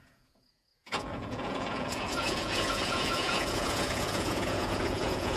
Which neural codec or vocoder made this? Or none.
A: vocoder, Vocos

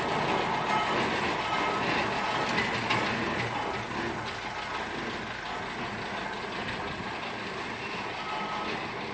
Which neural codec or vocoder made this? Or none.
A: none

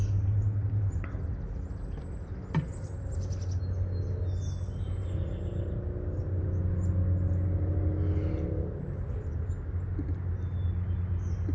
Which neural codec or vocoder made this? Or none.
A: none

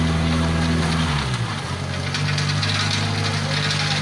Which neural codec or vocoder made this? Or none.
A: none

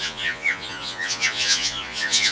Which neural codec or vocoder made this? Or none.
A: vocoder, Vocos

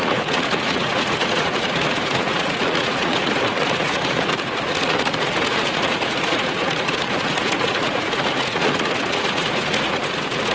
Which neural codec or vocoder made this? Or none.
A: vocoder, Vocos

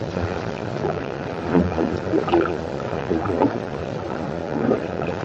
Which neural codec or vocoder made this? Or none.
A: vocoder, Vocos